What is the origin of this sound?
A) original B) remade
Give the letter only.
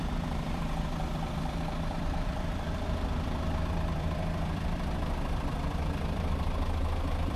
B